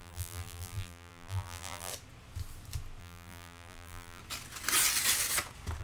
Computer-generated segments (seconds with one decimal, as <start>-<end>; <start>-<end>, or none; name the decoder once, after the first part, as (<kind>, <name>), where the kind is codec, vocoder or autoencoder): 0.0-1.9 (vocoder, BigVGAN v2); 3.0-4.2